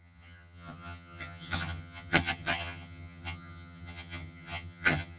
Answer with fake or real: fake